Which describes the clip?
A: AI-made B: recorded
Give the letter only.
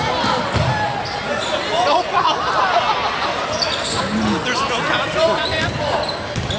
B